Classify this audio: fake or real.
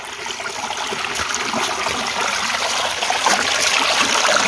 real